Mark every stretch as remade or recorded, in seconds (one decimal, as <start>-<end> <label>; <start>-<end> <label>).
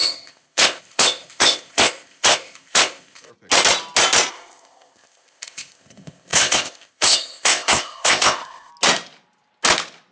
0.0-3.3 remade; 3.3-4.3 recorded; 4.3-8.7 remade; 8.7-10.1 recorded